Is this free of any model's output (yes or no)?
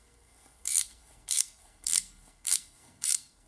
no